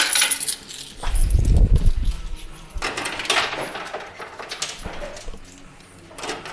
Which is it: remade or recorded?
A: recorded